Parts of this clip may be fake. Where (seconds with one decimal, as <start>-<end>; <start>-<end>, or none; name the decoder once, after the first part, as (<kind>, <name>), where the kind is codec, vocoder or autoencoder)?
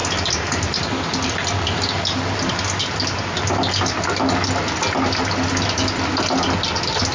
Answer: none